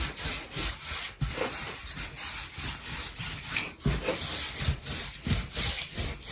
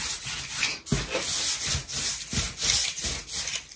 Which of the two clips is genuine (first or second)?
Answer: second